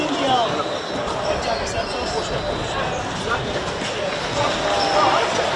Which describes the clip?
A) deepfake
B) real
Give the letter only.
B